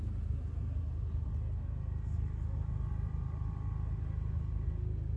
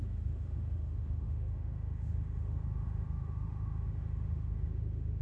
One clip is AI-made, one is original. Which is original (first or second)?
first